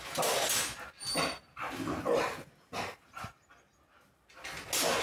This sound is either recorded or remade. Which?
recorded